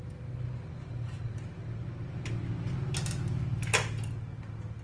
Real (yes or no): yes